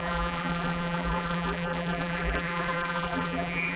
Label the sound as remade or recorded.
remade